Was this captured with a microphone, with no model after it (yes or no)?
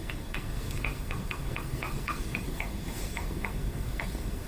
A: no